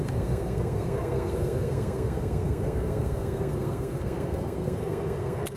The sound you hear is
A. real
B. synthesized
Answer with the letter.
B